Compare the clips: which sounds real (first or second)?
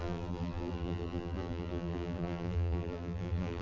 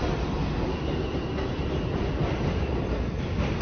second